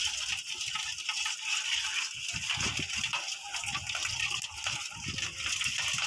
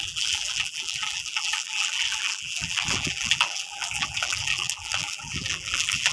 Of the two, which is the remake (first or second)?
second